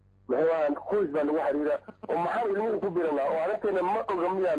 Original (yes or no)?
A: yes